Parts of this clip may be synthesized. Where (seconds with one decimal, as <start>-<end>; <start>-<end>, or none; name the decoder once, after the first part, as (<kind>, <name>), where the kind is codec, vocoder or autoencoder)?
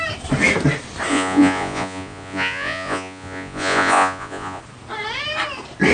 1.1-4.6 (vocoder, Vocos)